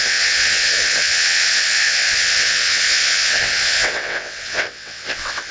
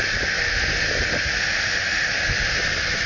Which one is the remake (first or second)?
first